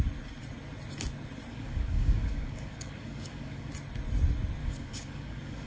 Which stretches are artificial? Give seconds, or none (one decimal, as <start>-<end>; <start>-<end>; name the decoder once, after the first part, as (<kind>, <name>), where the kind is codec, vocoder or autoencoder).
1.5-3.7 (codec, DAC); 4.6-5.7